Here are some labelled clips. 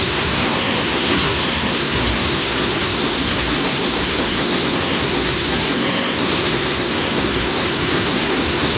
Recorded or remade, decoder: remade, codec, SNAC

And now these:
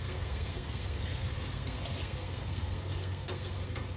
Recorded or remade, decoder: remade, codec, SNAC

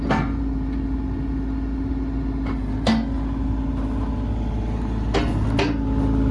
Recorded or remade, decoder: recorded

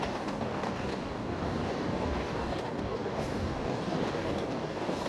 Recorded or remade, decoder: remade, codec, DAC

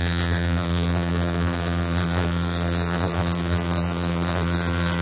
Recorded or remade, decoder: remade, vocoder, BigVGAN v2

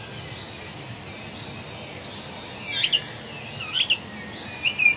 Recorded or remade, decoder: recorded